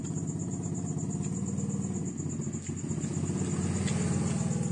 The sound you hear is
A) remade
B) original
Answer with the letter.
B